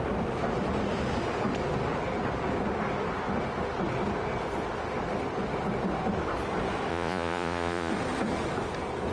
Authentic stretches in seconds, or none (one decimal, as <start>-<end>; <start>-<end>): 0.0-6.9; 7.9-9.1